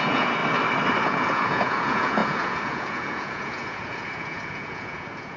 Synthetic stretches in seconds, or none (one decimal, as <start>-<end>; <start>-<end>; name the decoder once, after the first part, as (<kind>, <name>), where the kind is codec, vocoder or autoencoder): 0.0-0.4 (vocoder, Vocos); 1.0-5.4